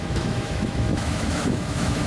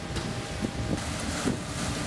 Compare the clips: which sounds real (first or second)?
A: second